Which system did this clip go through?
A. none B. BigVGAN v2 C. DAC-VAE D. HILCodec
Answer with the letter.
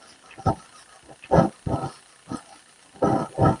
A